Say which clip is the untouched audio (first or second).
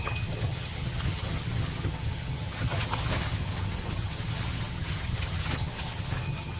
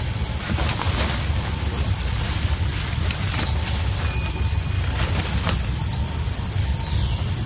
second